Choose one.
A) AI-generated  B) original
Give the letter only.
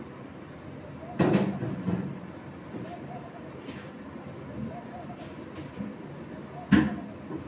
B